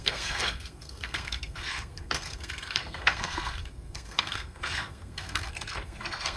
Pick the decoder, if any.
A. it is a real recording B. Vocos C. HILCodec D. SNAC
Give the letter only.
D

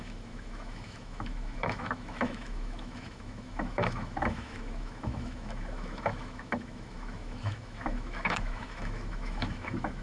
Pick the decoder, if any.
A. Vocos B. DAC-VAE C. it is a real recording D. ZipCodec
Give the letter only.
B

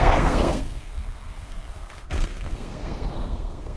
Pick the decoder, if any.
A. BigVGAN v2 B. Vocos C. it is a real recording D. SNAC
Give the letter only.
D